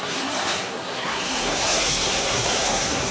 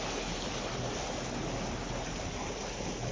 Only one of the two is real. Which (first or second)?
second